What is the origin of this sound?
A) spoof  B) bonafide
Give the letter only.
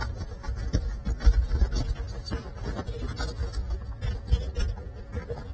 B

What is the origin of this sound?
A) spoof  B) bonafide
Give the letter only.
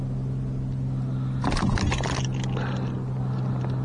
B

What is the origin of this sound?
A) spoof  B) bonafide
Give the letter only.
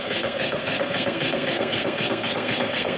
A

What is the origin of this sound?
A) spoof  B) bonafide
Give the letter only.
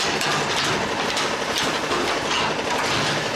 B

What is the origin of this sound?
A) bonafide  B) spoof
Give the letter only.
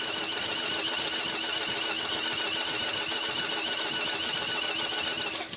A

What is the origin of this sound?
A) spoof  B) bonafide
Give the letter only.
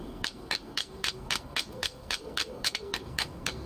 A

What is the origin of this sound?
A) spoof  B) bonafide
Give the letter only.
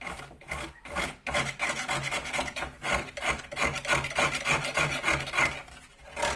B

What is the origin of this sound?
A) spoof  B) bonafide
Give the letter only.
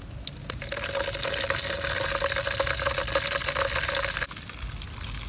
B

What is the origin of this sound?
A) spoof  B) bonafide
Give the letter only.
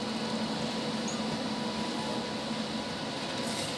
B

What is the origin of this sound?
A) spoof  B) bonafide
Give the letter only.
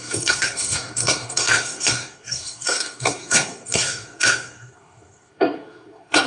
A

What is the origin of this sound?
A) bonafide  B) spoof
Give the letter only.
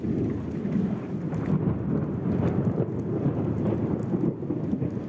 A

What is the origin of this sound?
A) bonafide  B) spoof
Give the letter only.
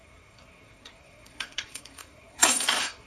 B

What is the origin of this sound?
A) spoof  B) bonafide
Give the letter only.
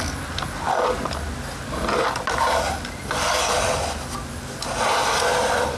B